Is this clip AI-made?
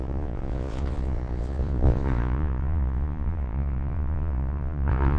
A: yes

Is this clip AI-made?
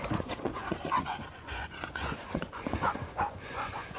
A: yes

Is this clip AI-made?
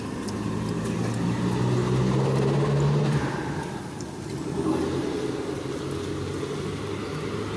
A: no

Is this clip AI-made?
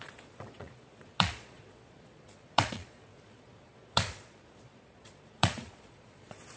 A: yes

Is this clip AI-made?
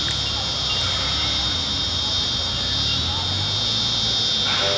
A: no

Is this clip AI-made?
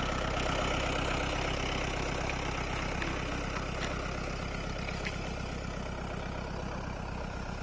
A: no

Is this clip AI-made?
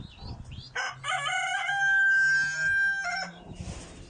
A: no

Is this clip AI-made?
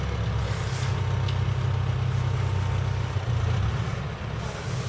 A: no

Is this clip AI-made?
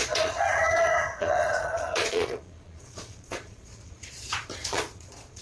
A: yes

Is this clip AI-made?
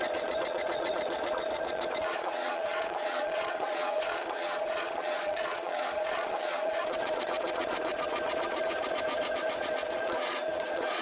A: yes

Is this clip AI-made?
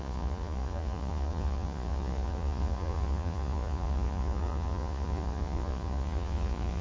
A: yes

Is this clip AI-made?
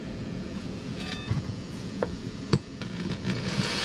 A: yes